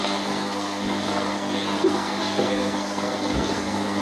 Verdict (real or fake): fake